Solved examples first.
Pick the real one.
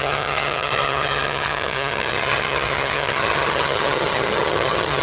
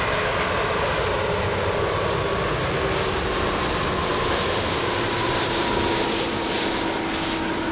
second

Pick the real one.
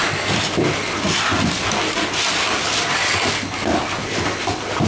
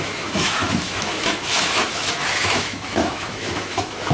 first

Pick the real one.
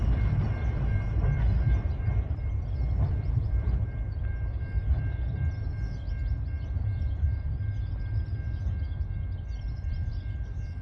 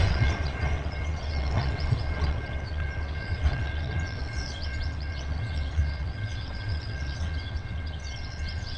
first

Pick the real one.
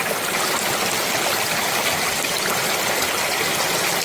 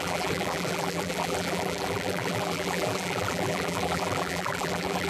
first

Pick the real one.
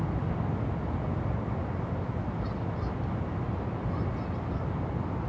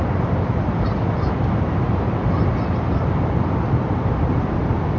first